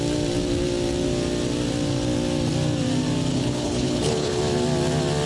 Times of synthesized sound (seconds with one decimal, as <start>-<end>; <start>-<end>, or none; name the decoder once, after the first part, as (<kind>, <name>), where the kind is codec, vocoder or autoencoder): 3.3-4.4 (codec, HILCodec)